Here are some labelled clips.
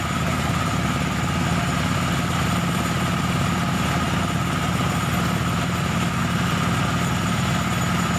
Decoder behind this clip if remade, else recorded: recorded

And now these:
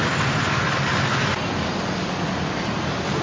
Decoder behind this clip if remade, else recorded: recorded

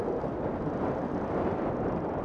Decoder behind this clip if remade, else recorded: recorded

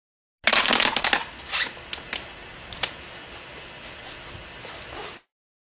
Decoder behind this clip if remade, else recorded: recorded